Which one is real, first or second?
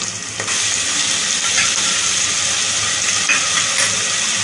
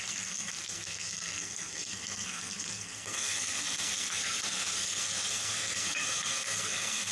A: first